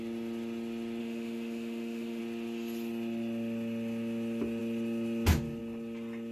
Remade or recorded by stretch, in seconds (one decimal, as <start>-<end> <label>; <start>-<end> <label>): 0.0-1.0 recorded; 1.0-2.2 remade; 2.2-6.3 recorded